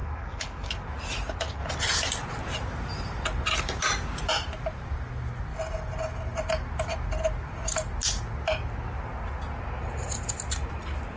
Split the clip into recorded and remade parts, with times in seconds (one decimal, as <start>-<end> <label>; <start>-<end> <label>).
0.0-0.7 remade; 0.7-11.2 recorded